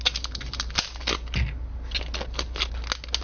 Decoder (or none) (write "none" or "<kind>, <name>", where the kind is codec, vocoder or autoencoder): none